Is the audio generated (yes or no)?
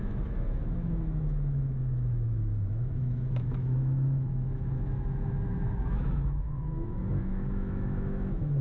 yes